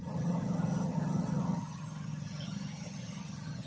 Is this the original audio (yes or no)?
no